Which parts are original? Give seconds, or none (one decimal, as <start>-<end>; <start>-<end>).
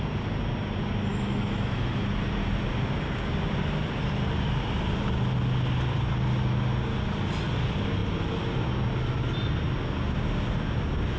0.0-1.1; 2.0-11.2